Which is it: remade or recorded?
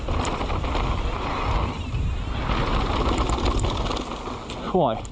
recorded